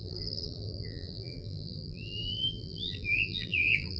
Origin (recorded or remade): remade